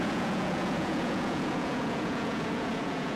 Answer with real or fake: fake